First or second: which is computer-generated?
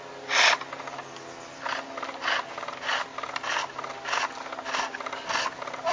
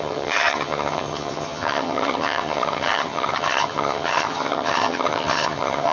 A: second